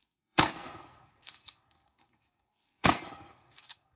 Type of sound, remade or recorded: remade